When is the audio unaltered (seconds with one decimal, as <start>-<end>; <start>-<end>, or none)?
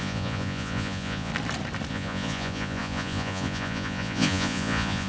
1.3-1.9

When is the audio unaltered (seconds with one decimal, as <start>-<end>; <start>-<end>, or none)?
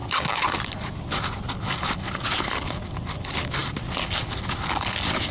0.0-5.3